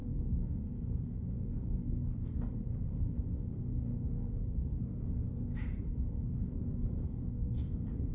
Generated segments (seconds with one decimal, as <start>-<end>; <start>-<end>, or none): 0.0-5.3; 5.8-8.1